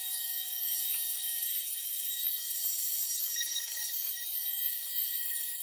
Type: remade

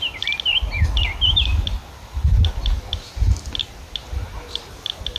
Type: recorded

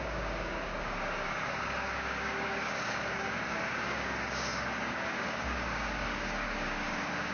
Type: remade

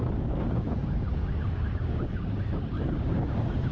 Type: remade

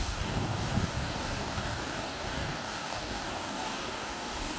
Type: remade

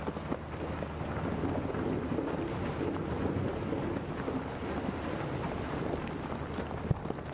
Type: recorded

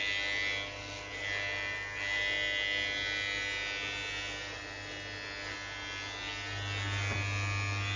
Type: recorded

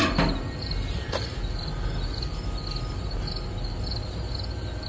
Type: recorded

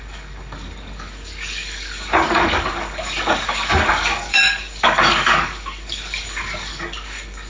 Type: remade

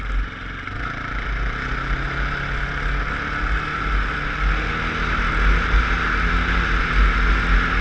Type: recorded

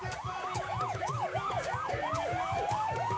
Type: remade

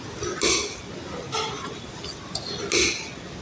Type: recorded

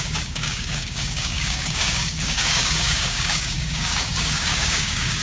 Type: remade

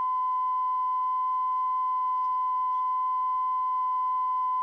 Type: recorded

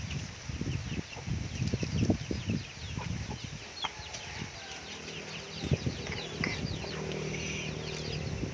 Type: recorded